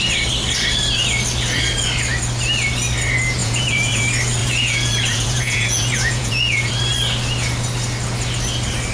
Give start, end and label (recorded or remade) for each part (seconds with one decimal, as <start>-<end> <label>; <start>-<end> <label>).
0.0-3.4 recorded; 3.4-4.0 remade; 4.0-4.4 recorded; 4.4-6.7 remade; 6.7-8.9 recorded